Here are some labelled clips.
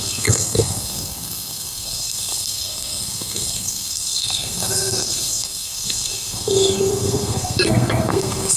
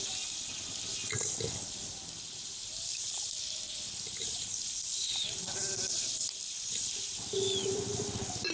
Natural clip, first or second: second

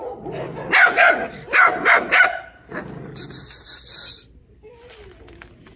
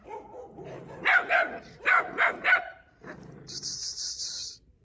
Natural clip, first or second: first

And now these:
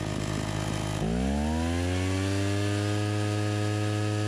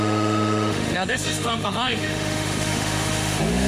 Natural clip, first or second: first